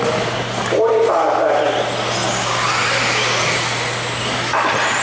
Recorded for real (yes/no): yes